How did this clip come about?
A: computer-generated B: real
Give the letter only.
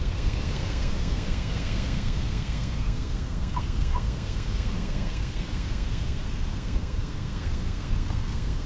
A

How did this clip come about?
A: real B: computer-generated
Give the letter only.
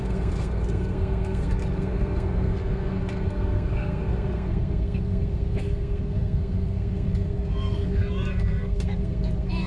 B